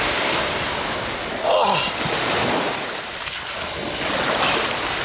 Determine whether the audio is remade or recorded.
recorded